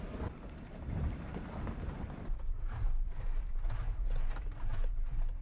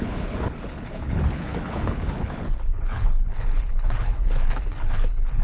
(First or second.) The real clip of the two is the first